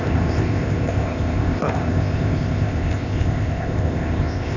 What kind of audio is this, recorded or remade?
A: remade